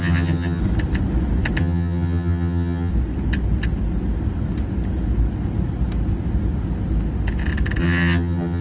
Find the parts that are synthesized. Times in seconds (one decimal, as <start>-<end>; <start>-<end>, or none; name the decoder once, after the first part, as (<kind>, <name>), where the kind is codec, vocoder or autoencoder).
0.0-0.6 (vocoder, HiFi-GAN); 1.6-2.9; 7.8-8.6